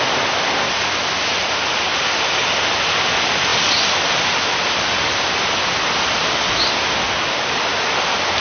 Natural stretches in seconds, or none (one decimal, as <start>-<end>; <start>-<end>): 0.0-8.4

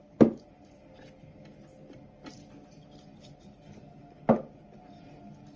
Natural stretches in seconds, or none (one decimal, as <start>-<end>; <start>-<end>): 0.8-5.6

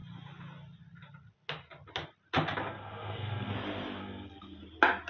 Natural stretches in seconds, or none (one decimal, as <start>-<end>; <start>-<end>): 0.0-2.7; 3.5-4.0; 4.6-5.1

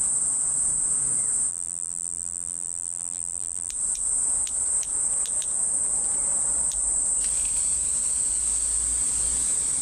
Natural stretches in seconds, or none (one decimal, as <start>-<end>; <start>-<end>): 0.0-1.5; 3.7-9.8

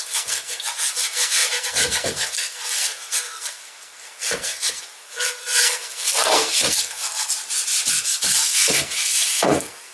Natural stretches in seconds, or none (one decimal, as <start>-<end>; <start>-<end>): 7.3-7.9

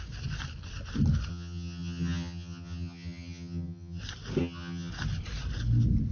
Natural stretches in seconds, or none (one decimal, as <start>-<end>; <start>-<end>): 0.0-1.3; 4.0-4.4; 4.9-6.1